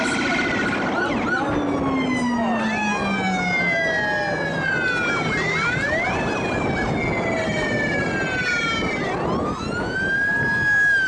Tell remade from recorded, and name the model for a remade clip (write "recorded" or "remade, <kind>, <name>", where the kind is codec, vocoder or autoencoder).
recorded